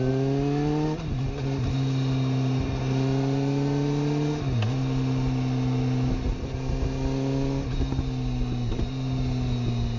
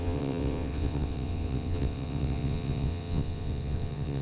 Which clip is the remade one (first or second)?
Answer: second